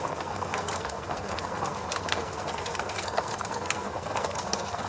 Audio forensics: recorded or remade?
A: remade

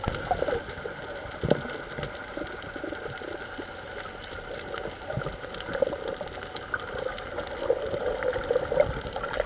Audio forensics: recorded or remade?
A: recorded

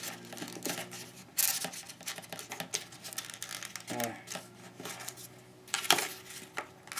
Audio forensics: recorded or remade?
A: recorded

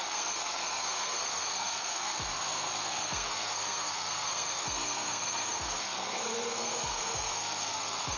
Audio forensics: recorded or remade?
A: remade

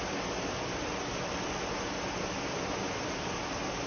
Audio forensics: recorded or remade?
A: recorded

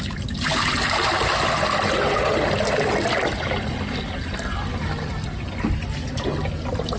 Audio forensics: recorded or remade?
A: recorded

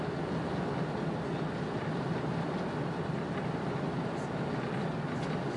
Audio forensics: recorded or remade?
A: recorded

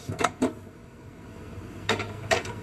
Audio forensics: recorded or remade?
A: remade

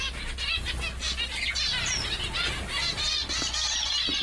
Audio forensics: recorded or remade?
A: recorded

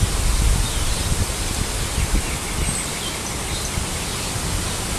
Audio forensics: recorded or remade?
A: recorded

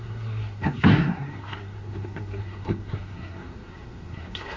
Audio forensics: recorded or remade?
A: remade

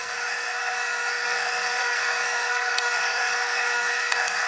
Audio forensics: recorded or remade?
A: remade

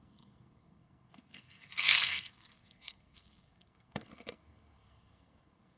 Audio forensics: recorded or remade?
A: remade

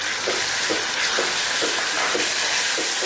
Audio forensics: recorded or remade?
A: recorded